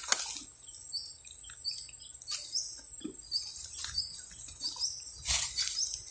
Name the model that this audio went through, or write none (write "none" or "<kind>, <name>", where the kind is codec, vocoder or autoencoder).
none